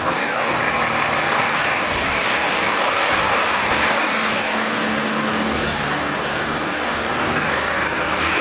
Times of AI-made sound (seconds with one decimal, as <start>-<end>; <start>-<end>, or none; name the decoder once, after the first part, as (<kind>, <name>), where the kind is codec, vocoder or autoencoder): 0.0-0.6 (codec, DAC); 1.2-8.4